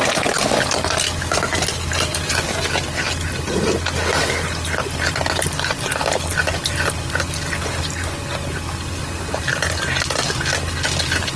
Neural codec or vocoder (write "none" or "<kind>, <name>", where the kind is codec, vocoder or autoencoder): none